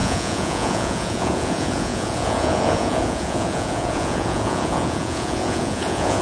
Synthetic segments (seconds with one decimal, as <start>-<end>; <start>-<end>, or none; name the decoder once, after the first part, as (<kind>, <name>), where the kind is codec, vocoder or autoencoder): 0.0-6.2 (vocoder, Vocos)